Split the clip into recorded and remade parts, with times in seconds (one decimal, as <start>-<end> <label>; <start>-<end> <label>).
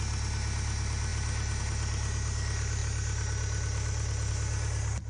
0.0-5.1 recorded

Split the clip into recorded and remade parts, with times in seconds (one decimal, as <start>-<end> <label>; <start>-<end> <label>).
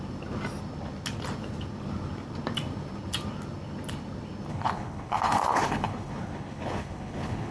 0.0-4.5 recorded; 4.5-7.5 remade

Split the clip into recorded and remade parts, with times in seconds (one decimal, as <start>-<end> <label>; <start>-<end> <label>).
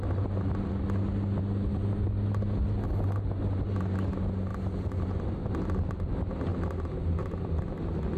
0.0-6.5 recorded; 6.5-7.4 remade; 7.4-8.2 recorded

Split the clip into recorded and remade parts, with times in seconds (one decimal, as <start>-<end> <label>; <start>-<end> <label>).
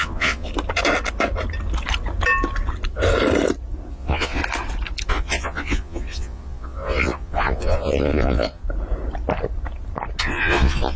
0.0-0.5 remade; 0.5-3.9 recorded; 3.9-4.4 remade; 4.4-5.1 recorded; 5.1-8.6 remade; 8.6-10.2 recorded; 10.2-11.0 remade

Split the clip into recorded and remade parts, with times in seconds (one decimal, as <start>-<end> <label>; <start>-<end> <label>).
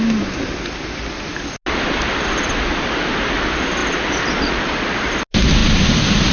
0.0-6.3 recorded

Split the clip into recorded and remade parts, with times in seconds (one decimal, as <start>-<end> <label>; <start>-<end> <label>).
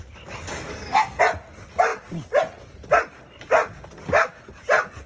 0.0-0.7 recorded; 0.7-1.2 remade; 1.2-5.1 recorded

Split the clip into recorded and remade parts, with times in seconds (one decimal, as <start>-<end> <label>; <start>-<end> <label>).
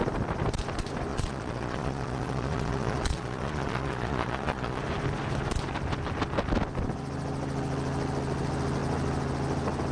0.0-1.1 recorded; 1.1-4.8 remade; 4.8-9.9 recorded